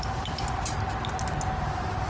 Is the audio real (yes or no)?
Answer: yes